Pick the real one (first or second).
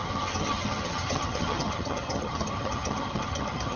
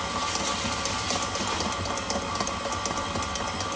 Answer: second